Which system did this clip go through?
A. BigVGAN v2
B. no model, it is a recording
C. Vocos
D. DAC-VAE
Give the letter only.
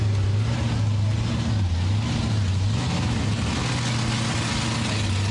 B